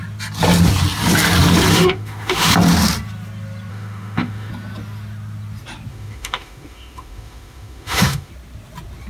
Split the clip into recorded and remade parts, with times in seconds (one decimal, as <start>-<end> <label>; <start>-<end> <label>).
0.0-1.7 recorded; 1.7-2.5 remade; 2.5-3.7 recorded; 3.7-4.5 remade; 4.5-5.9 recorded; 5.9-8.3 remade; 8.3-9.1 recorded